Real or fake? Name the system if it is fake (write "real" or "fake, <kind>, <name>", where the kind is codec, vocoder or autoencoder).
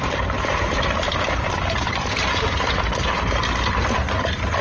fake, vocoder, BigVGAN v2